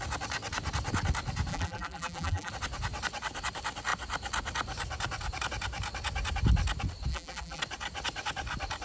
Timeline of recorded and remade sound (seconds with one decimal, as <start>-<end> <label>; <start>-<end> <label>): 0.0-1.5 recorded; 1.5-2.5 remade; 2.5-7.1 recorded; 7.1-7.6 remade; 7.6-8.8 recorded